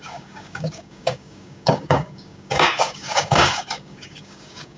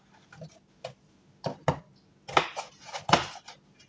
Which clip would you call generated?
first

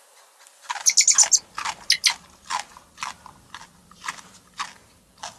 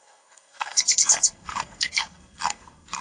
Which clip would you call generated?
second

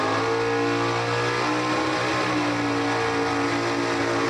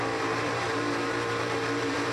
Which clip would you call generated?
second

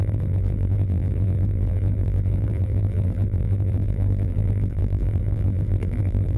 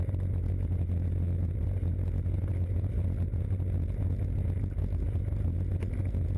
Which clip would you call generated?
first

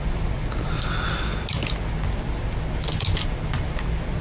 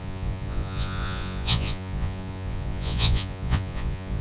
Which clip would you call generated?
second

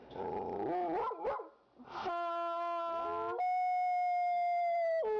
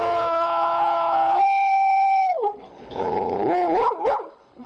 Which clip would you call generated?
second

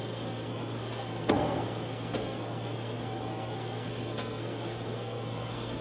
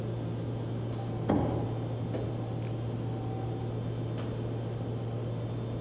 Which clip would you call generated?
first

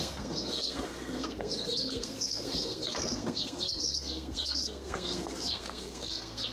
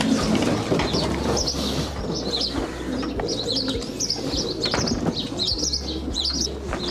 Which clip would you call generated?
first